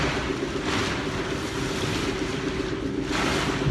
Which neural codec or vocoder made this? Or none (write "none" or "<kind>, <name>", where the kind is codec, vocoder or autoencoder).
none